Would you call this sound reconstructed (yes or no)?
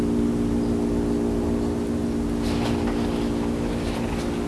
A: no